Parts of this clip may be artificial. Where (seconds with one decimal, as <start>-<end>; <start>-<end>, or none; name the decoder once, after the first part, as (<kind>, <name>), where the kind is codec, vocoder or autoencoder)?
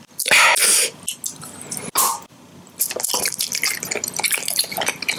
none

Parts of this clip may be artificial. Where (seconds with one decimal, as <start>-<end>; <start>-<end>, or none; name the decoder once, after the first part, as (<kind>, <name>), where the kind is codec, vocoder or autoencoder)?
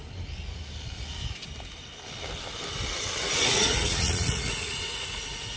3.5-5.6 (vocoder, Vocos)